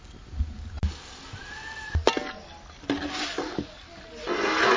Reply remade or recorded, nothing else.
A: recorded